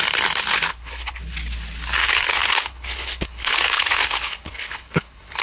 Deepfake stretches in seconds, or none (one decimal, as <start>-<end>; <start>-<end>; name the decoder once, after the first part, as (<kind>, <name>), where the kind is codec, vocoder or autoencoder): 0.7-1.2 (codec, HILCodec); 2.0-5.4